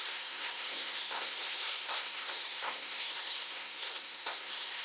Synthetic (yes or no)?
yes